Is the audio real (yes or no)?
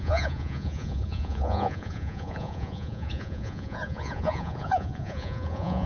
no